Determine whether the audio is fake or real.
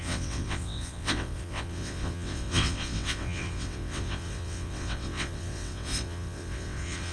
fake